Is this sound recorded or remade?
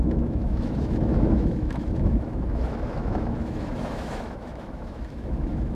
remade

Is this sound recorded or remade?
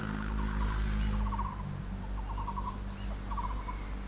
recorded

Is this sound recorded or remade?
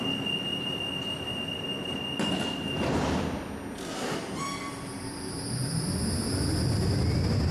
recorded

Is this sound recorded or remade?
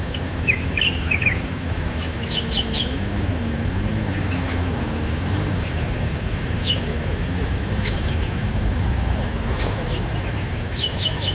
remade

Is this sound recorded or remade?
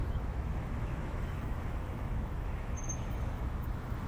remade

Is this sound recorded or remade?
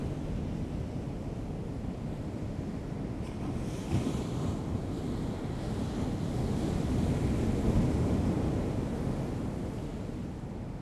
recorded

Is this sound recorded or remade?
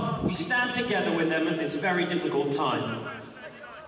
recorded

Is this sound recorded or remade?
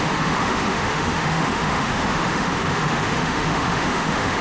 remade